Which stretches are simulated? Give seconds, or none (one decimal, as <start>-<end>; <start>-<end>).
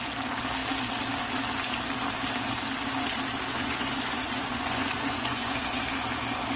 3.5-5.8